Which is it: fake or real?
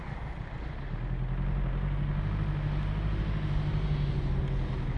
real